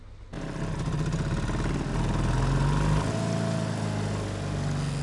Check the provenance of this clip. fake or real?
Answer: real